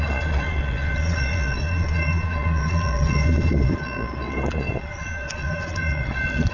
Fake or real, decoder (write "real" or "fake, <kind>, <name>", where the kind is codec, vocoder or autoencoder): fake, vocoder, Vocos